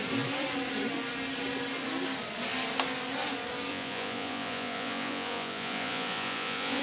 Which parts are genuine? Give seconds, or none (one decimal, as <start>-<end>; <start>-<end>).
0.0-3.7